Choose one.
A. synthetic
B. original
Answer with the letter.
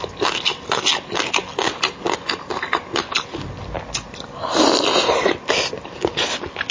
B